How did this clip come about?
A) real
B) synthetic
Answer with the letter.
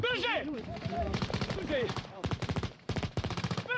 B